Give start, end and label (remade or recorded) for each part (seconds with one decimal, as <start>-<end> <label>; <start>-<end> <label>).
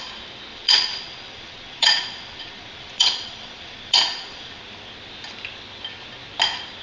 0.0-0.5 recorded; 0.5-4.6 remade; 4.6-6.8 recorded